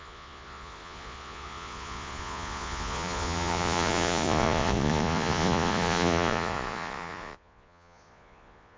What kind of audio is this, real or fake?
fake